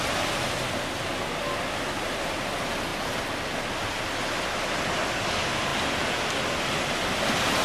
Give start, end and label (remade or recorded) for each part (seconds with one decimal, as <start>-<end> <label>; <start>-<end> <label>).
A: 0.0-7.6 recorded

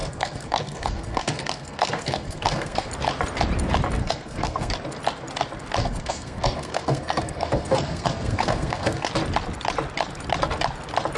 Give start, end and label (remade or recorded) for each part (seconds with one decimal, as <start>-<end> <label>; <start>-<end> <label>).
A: 0.0-2.9 remade; 2.9-4.0 recorded; 4.0-4.7 remade; 4.7-5.8 recorded; 5.8-9.1 remade; 9.1-11.2 recorded

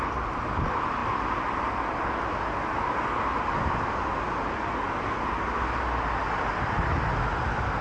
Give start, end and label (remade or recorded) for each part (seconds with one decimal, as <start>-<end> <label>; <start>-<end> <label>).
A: 0.0-7.8 recorded

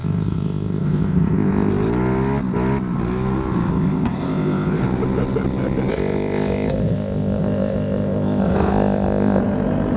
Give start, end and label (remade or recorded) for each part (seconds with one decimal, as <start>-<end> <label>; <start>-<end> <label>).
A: 0.0-1.7 remade; 1.7-3.7 recorded; 3.7-4.8 remade; 4.8-5.9 recorded; 5.9-9.4 remade; 9.4-10.0 recorded